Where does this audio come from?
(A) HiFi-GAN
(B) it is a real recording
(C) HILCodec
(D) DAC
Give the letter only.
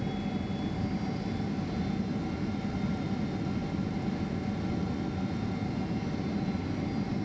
B